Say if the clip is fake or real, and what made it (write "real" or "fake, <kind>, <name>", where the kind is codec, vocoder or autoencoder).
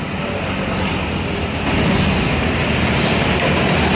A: real